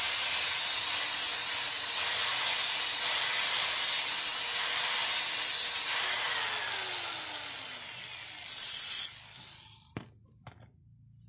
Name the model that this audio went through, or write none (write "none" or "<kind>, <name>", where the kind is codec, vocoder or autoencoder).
none